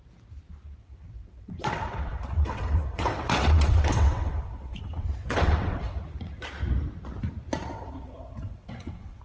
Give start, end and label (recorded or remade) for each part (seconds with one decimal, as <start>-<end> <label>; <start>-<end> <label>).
0.0-0.8 recorded; 0.8-6.0 remade; 6.0-7.7 recorded; 7.7-9.2 remade